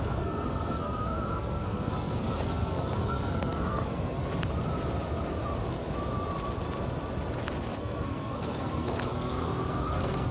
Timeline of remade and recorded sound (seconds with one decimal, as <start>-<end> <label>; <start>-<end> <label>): 0.0-4.2 remade; 4.2-7.8 recorded; 7.8-10.3 remade